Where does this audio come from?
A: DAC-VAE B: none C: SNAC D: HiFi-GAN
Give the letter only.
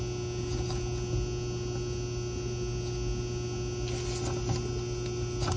B